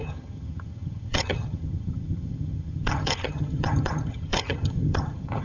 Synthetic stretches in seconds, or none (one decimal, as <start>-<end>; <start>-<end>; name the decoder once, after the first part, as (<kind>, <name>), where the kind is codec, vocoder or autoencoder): 0.0-5.4 (vocoder, HiFi-GAN)